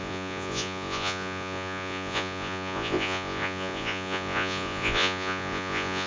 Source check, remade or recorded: remade